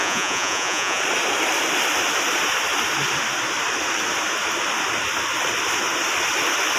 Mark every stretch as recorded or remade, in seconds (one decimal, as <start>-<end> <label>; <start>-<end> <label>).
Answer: 0.0-1.0 remade; 1.0-6.8 recorded